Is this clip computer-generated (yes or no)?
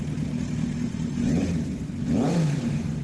no